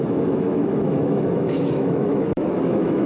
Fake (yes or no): yes